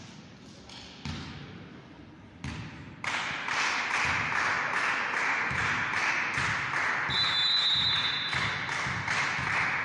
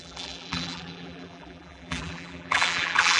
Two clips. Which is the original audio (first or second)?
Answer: first